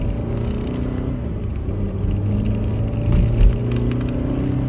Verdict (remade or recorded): recorded